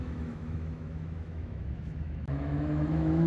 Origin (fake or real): fake